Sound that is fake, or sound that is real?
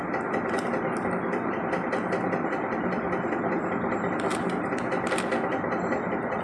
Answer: real